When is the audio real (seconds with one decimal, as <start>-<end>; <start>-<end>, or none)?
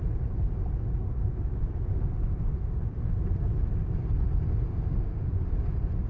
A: 0.0-0.8; 3.2-4.7; 5.3-6.1